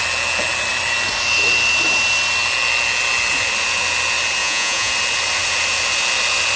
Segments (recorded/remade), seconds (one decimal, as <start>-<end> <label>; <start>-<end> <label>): 0.0-4.4 recorded; 4.4-4.9 remade; 4.9-6.6 recorded